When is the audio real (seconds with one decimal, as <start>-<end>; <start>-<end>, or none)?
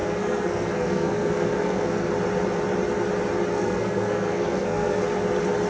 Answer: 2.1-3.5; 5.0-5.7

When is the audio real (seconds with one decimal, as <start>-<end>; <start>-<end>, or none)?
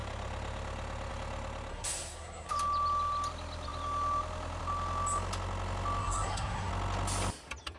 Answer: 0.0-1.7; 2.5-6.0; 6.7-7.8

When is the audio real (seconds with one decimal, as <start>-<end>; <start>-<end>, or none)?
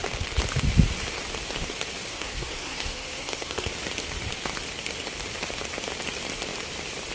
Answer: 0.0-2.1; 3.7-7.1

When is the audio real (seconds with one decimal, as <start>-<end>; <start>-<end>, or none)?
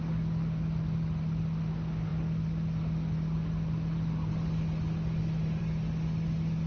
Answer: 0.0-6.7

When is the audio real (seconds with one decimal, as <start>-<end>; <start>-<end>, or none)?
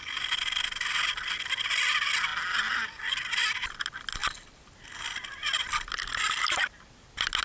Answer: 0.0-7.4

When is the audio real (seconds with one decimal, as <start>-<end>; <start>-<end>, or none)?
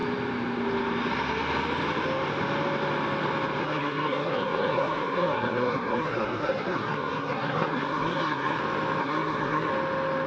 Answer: 0.0-3.6; 8.6-9.0; 9.7-10.3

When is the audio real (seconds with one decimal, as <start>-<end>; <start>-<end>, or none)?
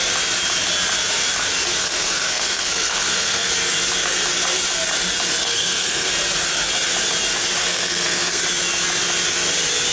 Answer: 0.0-1.8; 3.5-5.4; 6.1-7.6; 8.4-9.9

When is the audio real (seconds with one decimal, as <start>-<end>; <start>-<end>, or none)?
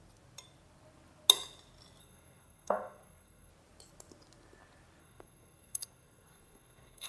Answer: 0.0-2.0; 3.5-5.0